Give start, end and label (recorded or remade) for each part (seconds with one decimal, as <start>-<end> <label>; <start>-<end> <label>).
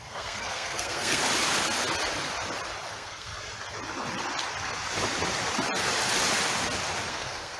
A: 0.0-1.2 remade; 1.2-2.9 recorded; 2.9-3.3 remade; 3.3-7.1 recorded; 7.1-7.6 remade